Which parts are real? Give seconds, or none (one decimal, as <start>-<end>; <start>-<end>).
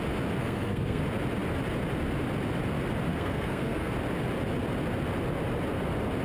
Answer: 0.0-0.4; 1.0-3.1; 3.9-6.2